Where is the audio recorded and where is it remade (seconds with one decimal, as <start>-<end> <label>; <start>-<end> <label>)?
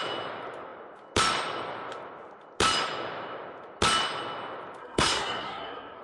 0.0-4.8 recorded; 4.8-6.0 remade